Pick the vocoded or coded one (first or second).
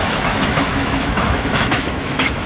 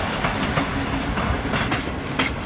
first